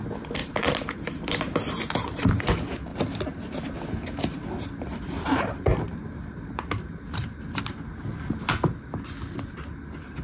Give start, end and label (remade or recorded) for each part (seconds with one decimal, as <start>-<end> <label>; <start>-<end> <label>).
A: 0.0-0.4 recorded; 0.4-2.4 remade; 2.4-2.9 recorded; 2.9-7.6 remade; 7.6-10.2 recorded